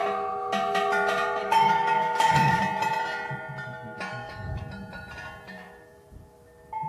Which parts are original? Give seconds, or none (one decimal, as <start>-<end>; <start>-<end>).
0.0-1.4; 2.6-4.1; 4.6-6.9